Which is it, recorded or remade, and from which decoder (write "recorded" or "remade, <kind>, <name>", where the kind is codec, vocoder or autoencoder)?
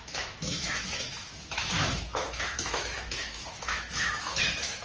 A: remade, autoencoder, DAC-VAE